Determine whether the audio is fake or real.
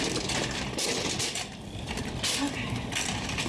real